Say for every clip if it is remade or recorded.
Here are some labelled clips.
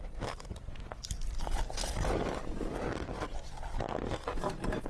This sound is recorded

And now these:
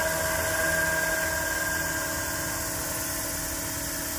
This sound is recorded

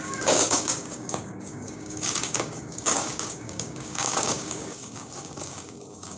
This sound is remade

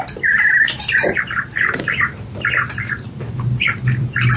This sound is remade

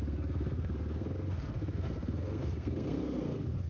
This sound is remade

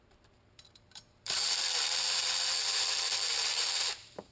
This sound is remade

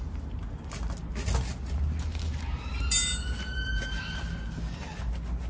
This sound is recorded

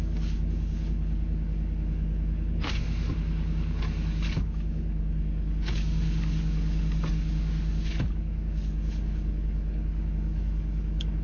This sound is remade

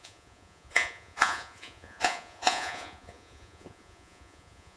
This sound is remade